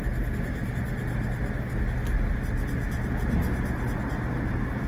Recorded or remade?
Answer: recorded